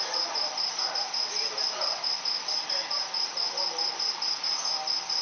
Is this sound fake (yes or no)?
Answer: no